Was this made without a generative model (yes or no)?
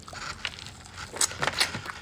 no